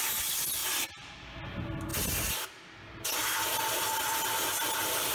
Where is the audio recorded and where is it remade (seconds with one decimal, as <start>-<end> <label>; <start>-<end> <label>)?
0.0-5.1 recorded